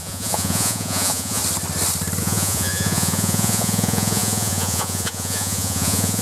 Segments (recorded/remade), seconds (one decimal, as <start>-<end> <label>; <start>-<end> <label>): 0.0-1.4 remade; 1.4-2.2 recorded; 2.2-6.2 remade